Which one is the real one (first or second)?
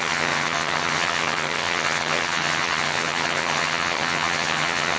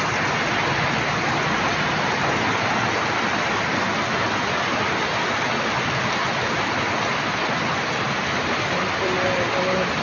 second